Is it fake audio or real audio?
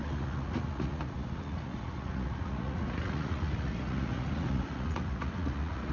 fake